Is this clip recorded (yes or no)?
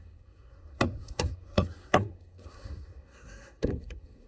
no